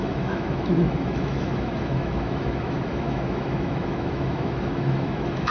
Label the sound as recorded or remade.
remade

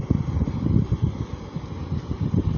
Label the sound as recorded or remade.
recorded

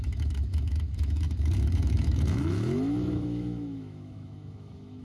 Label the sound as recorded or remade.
remade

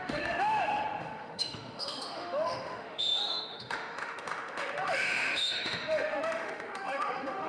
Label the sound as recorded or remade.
remade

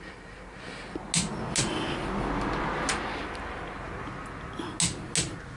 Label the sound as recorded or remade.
recorded